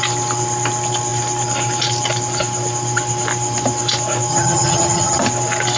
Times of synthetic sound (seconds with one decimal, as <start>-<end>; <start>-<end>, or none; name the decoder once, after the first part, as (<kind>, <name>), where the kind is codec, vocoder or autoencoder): 4.3-5.2 (vocoder, HiFi-GAN)

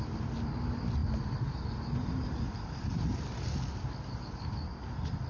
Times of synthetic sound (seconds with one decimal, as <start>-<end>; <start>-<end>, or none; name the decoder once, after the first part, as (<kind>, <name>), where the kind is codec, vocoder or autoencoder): none